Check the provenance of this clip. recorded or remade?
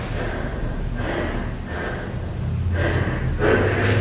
recorded